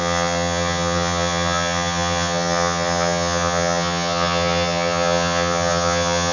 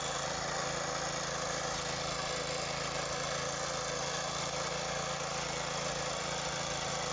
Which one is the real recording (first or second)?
second